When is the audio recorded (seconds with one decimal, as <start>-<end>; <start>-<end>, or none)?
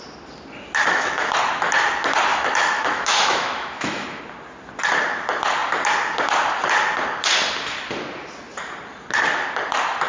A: 0.0-0.8; 1.3-2.3; 4.2-10.1